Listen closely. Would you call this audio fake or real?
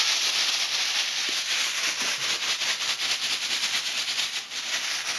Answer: real